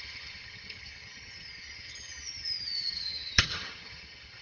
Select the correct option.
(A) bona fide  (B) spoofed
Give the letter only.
B